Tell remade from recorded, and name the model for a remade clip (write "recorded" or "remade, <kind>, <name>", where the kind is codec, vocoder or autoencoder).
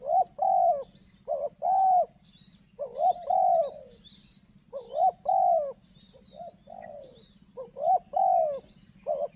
recorded